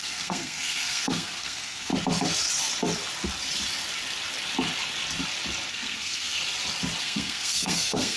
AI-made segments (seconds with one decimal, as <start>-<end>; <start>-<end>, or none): 0.0-1.9; 5.7-6.4; 7.0-8.2